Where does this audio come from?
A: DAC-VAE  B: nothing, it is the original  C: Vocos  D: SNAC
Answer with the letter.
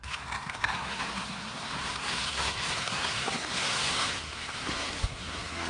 D